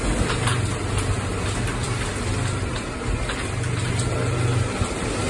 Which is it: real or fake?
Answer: real